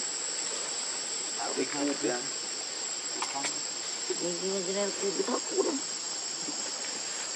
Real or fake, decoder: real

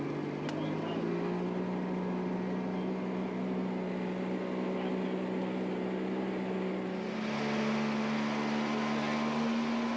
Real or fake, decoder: real